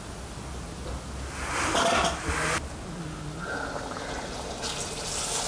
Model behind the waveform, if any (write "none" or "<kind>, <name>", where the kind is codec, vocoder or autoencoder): none